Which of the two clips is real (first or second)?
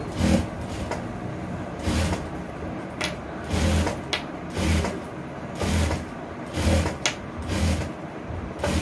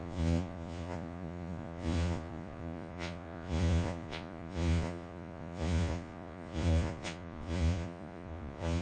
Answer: first